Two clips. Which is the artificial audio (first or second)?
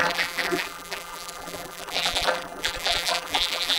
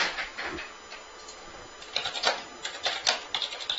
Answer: first